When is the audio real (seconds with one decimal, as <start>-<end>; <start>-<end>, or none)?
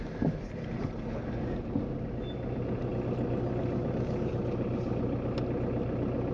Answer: 0.0-6.3